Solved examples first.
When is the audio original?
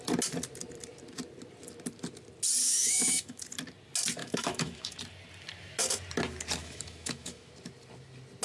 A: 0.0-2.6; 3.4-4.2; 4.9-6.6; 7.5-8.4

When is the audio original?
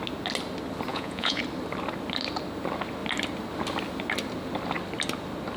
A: 0.0-0.9; 1.4-5.6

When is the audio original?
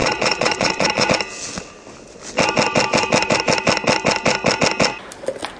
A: 1.1-5.6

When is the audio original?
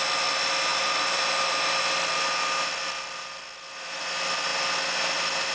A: 0.0-0.7; 1.2-5.5